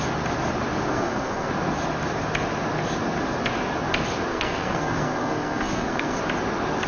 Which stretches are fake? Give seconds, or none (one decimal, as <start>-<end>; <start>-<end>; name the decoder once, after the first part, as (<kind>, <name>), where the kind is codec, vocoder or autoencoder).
0.9-1.5 (codec, SNAC); 4.3-6.2